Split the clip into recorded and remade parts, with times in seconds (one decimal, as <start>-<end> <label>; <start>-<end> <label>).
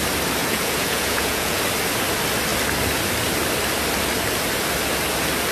0.0-0.4 recorded; 0.4-1.6 remade; 1.6-5.5 recorded